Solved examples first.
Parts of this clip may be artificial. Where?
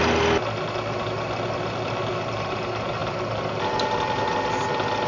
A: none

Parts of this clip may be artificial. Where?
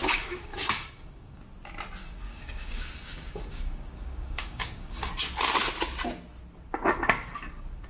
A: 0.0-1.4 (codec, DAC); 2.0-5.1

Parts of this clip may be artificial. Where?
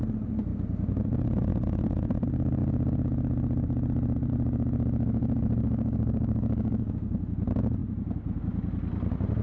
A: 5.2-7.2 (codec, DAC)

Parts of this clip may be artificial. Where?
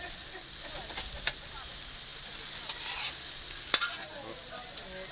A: none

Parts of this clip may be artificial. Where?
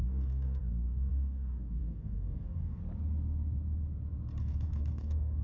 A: 0.0-2.8 (codec, DAC); 4.4-5.4